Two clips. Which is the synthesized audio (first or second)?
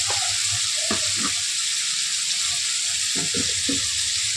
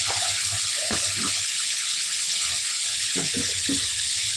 second